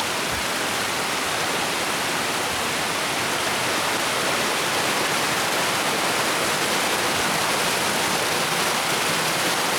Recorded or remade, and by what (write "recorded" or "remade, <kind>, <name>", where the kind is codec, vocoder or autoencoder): recorded